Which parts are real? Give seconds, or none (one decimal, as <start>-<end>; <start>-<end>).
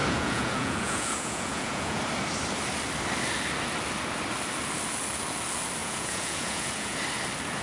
2.0-5.8; 7.0-7.6